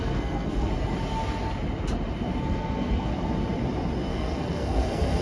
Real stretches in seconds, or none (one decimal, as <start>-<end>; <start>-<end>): 0.7-2.4; 3.1-4.1